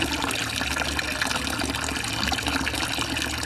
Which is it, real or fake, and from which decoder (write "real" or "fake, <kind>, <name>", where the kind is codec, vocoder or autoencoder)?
real